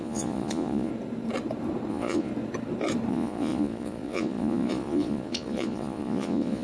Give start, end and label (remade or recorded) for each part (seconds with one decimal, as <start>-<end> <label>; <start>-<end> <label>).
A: 0.0-0.9 remade; 0.9-1.9 recorded; 1.9-2.3 remade; 2.3-3.1 recorded; 3.1-6.6 remade